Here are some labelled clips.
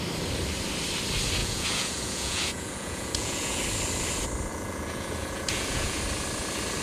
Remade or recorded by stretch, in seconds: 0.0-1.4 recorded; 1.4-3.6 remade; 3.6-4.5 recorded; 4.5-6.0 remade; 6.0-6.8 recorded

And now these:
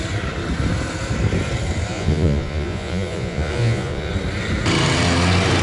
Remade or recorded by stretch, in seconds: 0.0-1.9 recorded; 1.9-4.1 remade; 4.1-5.6 recorded

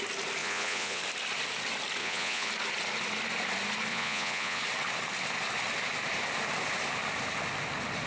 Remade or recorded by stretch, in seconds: 0.0-0.4 recorded; 0.4-1.0 remade; 1.0-2.0 recorded; 2.0-2.5 remade; 2.5-3.9 recorded; 3.9-4.6 remade; 4.6-8.1 recorded

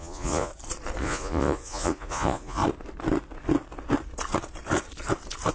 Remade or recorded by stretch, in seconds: 0.0-0.5 remade; 0.5-1.0 recorded; 1.0-2.6 remade; 2.6-5.5 recorded

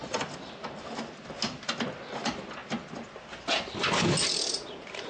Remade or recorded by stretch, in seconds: 0.0-5.1 recorded

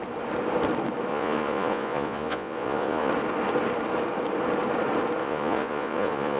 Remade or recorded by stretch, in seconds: 0.0-1.1 recorded; 1.1-3.1 remade; 3.1-5.2 recorded; 5.2-6.4 remade